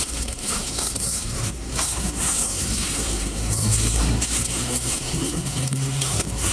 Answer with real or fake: fake